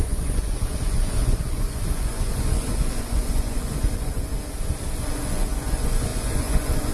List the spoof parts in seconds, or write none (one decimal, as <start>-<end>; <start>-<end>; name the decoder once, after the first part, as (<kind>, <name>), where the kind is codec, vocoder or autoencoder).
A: 0.0-4.3 (vocoder, Vocos); 5.0-6.9